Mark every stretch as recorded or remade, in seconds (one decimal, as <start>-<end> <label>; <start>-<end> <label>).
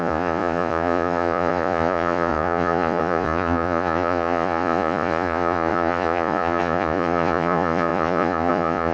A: 0.0-8.9 remade